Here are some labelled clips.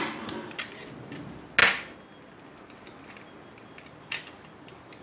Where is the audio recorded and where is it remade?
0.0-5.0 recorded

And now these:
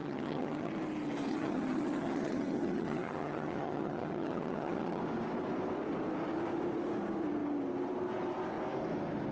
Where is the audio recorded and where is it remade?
0.0-0.7 remade; 0.7-1.3 recorded; 1.3-5.0 remade; 5.0-9.3 recorded

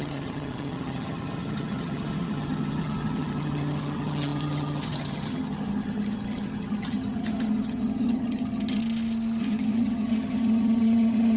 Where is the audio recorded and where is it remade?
0.0-8.8 remade; 8.8-9.4 recorded; 9.4-11.4 remade

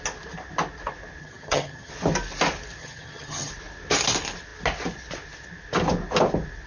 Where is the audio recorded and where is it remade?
0.0-1.2 recorded; 1.2-1.9 remade; 1.9-2.8 recorded; 2.8-3.5 remade; 3.5-6.7 recorded